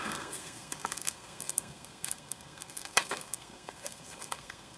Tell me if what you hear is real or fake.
fake